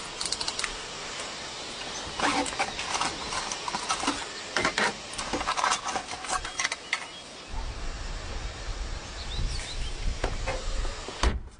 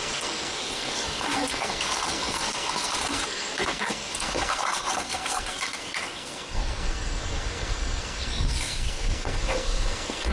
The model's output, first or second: second